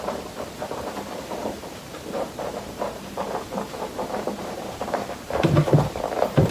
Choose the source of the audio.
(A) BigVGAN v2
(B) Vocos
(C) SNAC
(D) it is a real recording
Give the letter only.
A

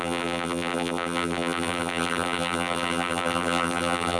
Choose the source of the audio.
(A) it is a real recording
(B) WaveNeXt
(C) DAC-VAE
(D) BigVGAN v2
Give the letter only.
D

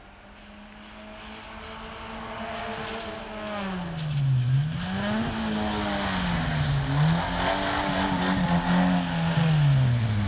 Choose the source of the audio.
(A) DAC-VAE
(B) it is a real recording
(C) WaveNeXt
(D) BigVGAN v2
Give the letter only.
B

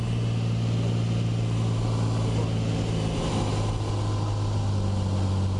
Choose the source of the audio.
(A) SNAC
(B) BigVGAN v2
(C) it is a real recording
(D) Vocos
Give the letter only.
C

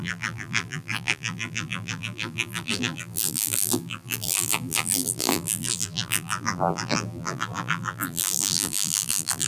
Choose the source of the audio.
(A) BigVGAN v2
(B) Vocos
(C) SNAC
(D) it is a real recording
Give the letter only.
A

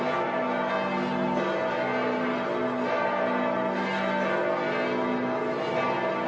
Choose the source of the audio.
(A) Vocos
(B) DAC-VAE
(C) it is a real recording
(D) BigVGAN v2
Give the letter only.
C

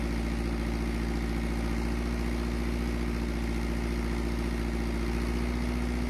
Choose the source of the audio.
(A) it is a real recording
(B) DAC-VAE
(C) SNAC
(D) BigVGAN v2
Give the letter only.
A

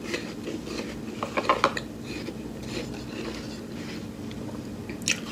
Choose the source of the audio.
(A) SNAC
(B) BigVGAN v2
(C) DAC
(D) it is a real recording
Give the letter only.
D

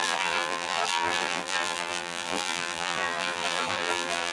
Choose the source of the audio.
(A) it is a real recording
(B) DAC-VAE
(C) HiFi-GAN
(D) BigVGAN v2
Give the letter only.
D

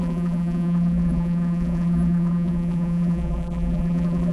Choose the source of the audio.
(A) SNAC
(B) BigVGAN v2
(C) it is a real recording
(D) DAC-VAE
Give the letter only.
B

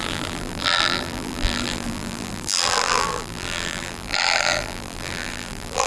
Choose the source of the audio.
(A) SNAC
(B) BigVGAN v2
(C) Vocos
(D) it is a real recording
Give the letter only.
B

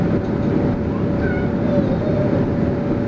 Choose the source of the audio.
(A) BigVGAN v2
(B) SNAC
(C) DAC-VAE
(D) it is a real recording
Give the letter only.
D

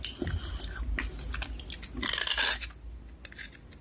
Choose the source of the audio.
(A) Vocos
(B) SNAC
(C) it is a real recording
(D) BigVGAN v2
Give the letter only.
C